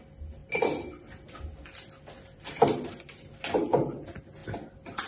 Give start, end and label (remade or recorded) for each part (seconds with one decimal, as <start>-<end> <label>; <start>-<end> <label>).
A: 0.0-5.1 recorded